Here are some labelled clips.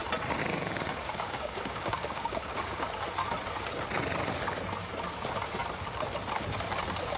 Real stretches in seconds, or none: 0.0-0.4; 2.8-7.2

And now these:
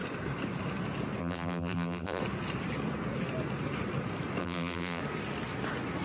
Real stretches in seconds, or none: 0.0-1.2; 2.2-4.4; 5.0-6.0